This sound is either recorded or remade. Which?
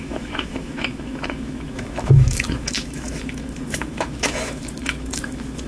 remade